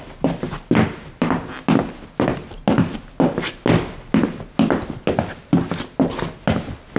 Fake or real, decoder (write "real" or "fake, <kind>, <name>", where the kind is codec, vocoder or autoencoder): real